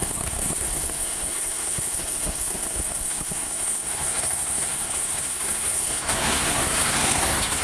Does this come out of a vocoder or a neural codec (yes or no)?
yes